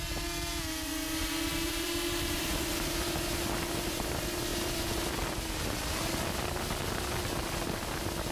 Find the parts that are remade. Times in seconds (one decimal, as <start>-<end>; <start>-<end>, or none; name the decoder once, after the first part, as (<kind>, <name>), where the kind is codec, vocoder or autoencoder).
1.5-3.5 (vocoder, BigVGAN v2); 4.5-5.6